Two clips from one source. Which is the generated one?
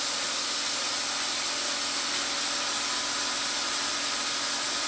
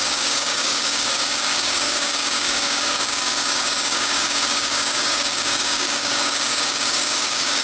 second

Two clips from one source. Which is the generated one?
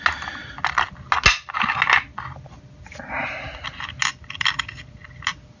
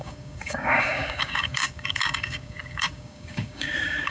second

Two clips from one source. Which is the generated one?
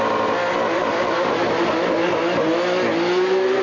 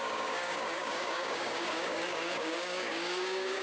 second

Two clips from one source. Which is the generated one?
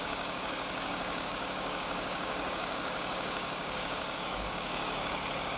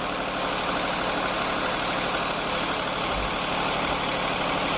first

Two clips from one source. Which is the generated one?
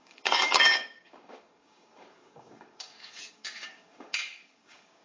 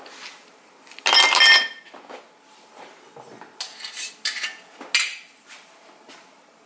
first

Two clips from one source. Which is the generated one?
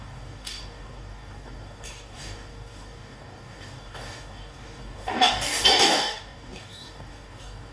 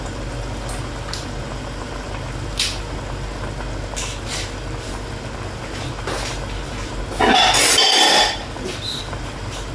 first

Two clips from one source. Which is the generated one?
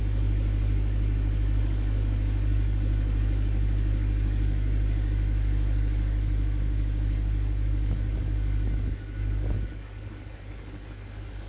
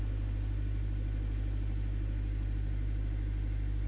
first